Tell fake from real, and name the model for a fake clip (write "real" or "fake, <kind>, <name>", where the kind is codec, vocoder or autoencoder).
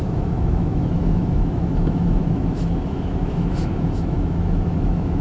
fake, autoencoder, DAC-VAE